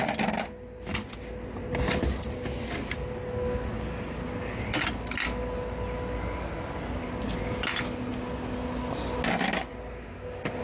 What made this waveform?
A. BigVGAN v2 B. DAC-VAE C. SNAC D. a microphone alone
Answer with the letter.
D